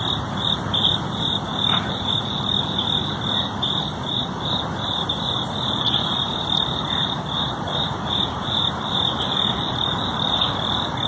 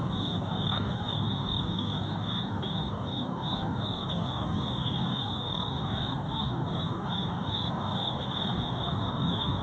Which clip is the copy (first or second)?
second